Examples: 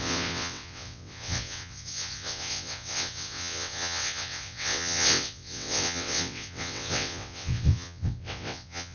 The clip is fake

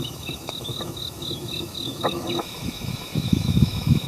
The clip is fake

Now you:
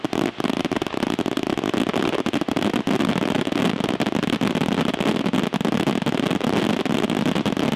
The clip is real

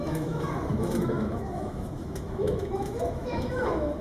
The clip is fake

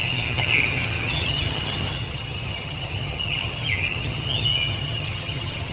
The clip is fake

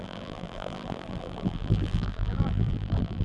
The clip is fake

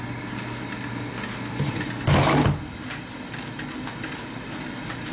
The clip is real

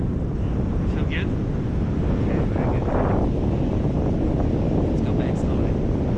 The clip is real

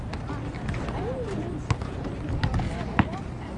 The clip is real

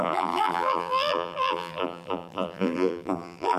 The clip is fake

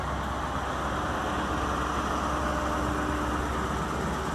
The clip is real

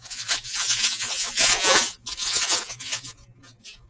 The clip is fake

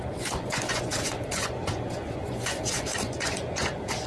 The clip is fake